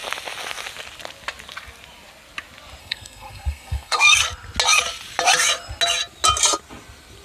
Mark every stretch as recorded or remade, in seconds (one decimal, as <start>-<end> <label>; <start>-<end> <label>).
0.0-2.8 recorded; 2.8-4.0 remade; 4.0-7.2 recorded